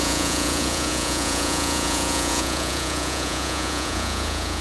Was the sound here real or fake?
fake